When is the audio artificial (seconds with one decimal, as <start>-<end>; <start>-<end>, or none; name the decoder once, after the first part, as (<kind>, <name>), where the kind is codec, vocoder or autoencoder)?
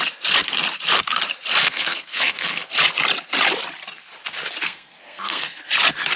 1.6-2.7 (codec, SNAC); 4.6-5.7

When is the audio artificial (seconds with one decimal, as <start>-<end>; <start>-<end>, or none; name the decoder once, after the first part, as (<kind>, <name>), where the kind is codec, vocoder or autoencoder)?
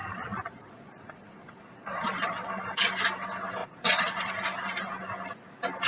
0.0-2.5 (vocoder, Vocos); 3.6-4.3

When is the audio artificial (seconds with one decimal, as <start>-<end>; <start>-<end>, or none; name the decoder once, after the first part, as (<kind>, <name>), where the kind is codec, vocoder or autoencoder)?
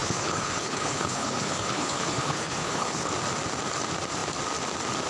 0.0-3.1 (codec, HILCodec)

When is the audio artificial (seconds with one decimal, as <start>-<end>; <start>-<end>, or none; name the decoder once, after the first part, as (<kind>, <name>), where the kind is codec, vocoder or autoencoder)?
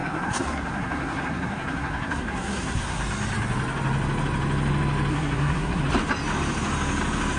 0.0-3.0 (codec, SNAC); 5.1-5.8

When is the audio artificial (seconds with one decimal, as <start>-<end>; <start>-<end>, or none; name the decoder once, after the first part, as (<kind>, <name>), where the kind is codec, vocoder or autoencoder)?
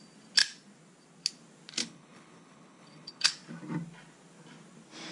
1.8-3.3 (codec, HILCodec)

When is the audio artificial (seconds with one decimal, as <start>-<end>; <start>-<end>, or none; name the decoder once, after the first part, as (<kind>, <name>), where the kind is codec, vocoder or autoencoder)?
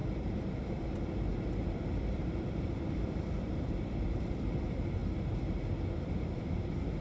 0.0-5.0 (vocoder, BigVGAN v2); 5.9-7.0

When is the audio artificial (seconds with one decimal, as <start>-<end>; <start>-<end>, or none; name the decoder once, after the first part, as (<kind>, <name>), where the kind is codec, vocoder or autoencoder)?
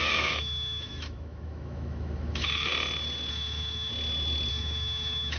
0.0-2.7 (autoencoder, DAC-VAE); 3.3-3.9; 4.5-5.4